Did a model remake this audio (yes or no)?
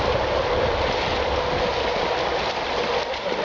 no